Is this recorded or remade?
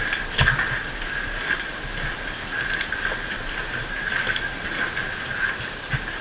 recorded